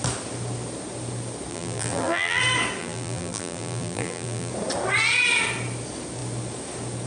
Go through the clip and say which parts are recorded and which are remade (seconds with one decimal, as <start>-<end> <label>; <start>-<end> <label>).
0.0-1.5 recorded; 1.5-2.4 remade; 2.4-2.8 recorded; 2.8-4.5 remade; 4.5-7.1 recorded